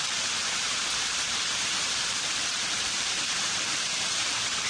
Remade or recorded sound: remade